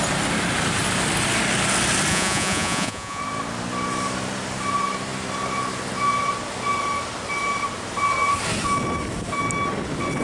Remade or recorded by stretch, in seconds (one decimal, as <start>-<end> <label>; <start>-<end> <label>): 0.0-2.1 recorded; 2.1-3.2 remade; 3.2-10.2 recorded